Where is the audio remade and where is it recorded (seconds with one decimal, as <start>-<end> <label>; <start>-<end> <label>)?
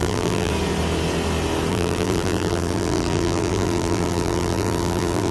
0.0-0.5 remade; 0.5-1.7 recorded; 1.7-5.3 remade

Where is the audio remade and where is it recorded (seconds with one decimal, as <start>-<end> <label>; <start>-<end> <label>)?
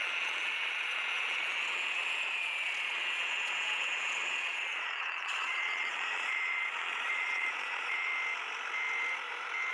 0.0-8.1 remade; 8.1-9.7 recorded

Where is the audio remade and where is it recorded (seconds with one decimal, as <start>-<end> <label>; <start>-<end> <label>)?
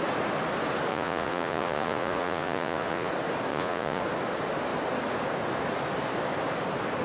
0.0-0.9 recorded; 0.9-3.1 remade; 3.1-3.5 recorded; 3.5-4.0 remade; 4.0-7.0 recorded